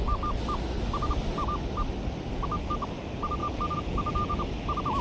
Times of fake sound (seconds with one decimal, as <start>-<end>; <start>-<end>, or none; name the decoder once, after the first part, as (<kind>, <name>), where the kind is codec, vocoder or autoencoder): 3.4-4.4 (vocoder, Vocos)